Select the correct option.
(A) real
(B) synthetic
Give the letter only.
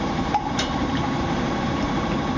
B